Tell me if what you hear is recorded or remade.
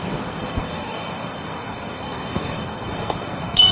remade